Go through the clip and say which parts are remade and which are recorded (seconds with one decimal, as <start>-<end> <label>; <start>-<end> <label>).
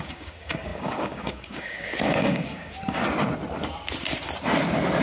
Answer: 0.0-3.0 remade; 3.0-5.0 recorded